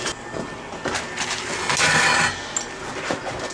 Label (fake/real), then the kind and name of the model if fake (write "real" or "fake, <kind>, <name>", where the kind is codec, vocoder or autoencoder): real